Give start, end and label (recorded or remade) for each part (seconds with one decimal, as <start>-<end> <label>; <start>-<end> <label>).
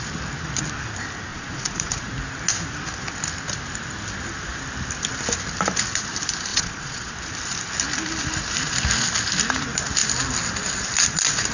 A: 0.0-1.3 recorded; 1.3-2.1 remade; 2.1-6.5 recorded; 6.5-7.1 remade; 7.1-11.5 recorded